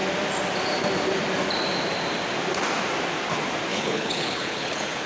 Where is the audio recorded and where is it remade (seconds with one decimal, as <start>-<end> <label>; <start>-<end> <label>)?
0.0-3.7 recorded; 3.7-5.1 remade